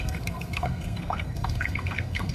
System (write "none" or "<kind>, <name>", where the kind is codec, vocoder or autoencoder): codec, SNAC